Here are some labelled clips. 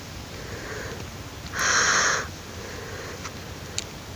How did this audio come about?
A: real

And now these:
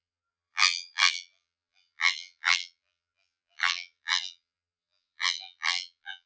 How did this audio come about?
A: fake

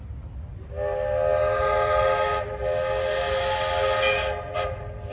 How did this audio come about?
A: real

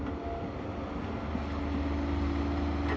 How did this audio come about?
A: real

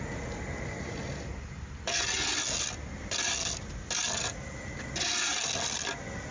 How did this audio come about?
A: real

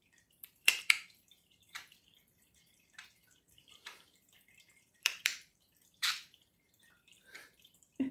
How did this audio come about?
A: fake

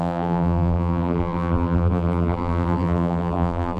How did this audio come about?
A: fake